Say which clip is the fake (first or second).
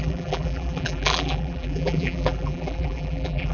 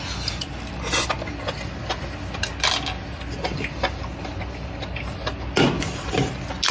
first